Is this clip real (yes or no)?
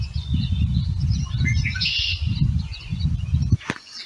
no